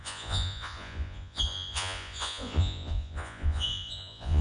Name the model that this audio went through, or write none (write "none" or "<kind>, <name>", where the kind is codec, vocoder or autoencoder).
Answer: vocoder, Vocos